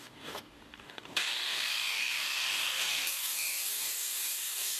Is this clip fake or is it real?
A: fake